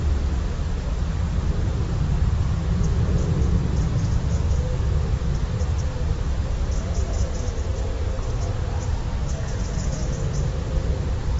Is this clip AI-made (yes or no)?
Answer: no